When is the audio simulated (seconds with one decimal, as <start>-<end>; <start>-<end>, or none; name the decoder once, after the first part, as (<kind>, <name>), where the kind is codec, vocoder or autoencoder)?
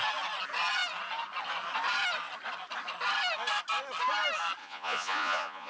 4.6-5.7 (vocoder, Vocos)